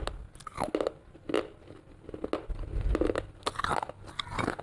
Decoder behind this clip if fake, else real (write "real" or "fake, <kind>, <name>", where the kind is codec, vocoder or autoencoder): real